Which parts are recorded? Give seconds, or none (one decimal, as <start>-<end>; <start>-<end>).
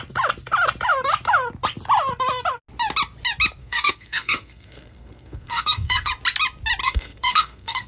0.0-3.6; 6.1-6.8